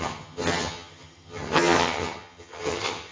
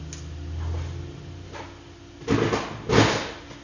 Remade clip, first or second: first